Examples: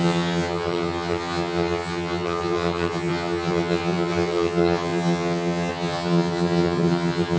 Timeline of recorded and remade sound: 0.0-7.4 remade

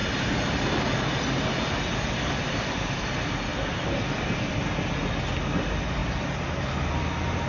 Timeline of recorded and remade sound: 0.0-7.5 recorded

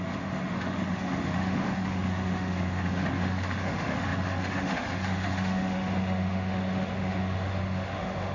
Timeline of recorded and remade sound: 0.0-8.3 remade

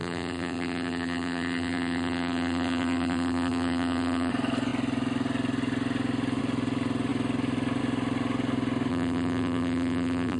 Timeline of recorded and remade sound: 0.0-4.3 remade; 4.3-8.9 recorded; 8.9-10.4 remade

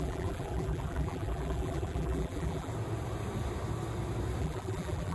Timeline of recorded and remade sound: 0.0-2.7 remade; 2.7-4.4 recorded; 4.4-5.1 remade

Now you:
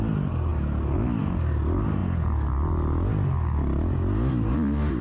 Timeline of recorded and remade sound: 0.0-5.0 recorded